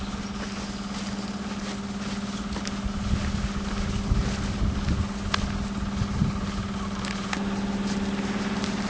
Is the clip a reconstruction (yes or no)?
no